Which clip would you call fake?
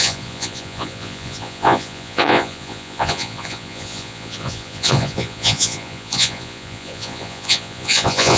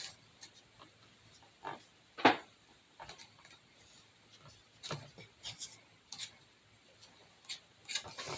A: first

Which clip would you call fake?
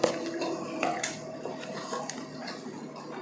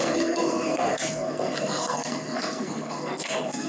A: second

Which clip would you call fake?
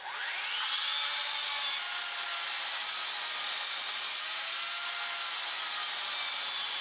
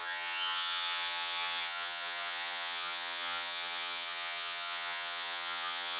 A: second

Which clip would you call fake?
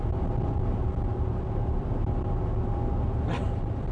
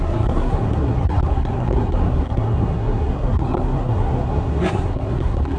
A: second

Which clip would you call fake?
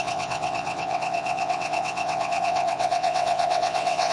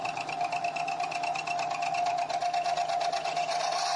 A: first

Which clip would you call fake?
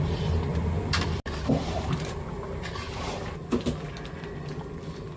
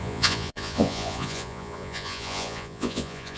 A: second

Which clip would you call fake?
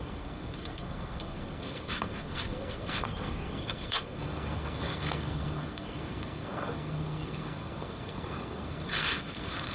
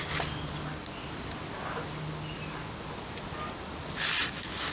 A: first